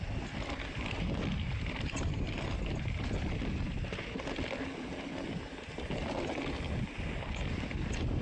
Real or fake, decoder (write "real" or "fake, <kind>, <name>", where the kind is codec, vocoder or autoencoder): real